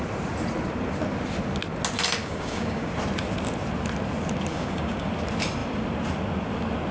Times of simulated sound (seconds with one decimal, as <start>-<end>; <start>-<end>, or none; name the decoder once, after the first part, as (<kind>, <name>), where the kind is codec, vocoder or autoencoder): 2.2-2.9 (codec, DAC); 4.5-5.1